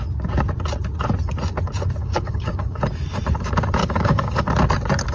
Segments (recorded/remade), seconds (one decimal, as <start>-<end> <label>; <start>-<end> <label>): 0.0-2.0 recorded; 2.0-2.8 remade; 2.8-3.8 recorded; 3.8-4.5 remade; 4.5-5.1 recorded